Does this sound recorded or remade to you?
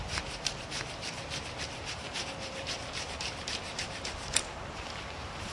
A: remade